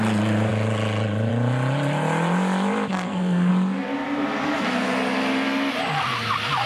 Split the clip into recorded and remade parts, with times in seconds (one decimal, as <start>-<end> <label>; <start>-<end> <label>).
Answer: 0.0-2.9 recorded; 2.9-3.5 remade; 3.5-6.7 recorded